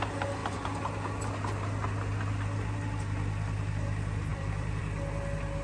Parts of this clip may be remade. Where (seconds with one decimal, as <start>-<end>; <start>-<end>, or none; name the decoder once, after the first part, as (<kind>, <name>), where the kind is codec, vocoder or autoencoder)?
4.3-4.8 (vocoder, BigVGAN v2)